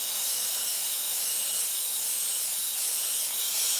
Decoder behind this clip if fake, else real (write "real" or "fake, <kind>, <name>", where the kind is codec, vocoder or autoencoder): fake, autoencoder, DAC-VAE